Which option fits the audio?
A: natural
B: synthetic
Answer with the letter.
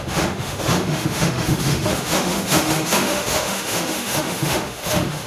B